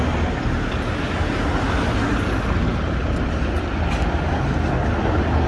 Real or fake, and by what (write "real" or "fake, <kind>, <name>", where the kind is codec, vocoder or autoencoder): real